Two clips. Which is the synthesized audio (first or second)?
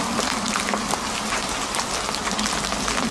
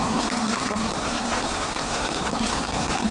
second